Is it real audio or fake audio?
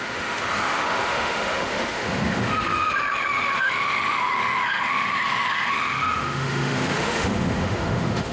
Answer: fake